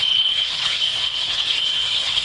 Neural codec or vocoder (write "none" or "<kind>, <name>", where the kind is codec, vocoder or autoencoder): codec, HILCodec